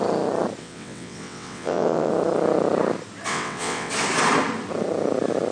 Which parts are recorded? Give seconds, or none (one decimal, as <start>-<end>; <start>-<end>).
0.0-0.6; 2.1-3.3; 3.9-5.5